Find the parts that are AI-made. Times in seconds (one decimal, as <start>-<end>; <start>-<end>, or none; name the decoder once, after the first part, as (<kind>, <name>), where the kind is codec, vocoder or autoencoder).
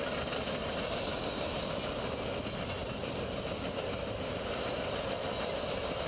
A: none